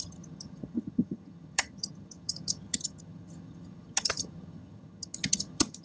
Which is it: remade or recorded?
remade